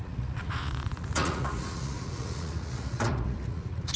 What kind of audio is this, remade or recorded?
remade